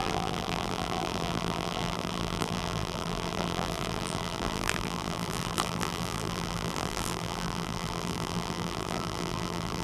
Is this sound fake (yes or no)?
yes